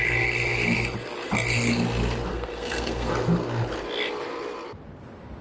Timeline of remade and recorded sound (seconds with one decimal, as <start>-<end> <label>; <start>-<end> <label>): 0.0-2.3 recorded; 2.3-3.1 remade; 3.1-5.4 recorded